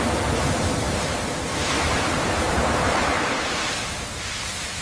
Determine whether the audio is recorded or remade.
remade